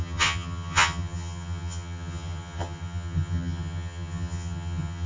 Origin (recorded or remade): remade